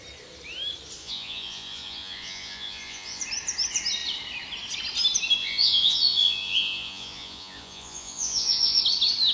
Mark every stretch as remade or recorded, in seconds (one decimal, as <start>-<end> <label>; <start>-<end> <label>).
0.0-1.0 recorded; 1.0-3.2 remade; 3.2-5.4 recorded; 5.4-8.8 remade; 8.8-9.3 recorded